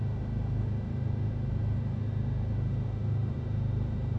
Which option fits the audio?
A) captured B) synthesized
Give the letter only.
A